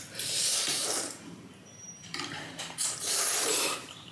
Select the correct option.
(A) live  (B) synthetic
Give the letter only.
B